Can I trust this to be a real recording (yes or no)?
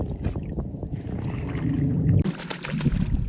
yes